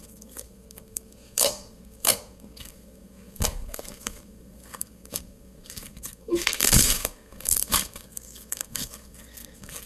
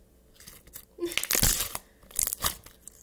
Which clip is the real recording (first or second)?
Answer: second